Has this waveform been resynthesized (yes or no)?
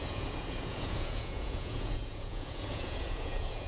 yes